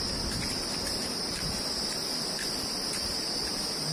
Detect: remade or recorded recorded